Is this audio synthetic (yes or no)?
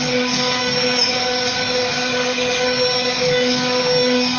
yes